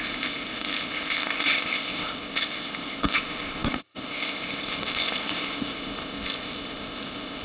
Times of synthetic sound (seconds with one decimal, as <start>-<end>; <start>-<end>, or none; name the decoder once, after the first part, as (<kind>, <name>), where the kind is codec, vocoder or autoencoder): 0.0-7.4 (codec, ZipCodec)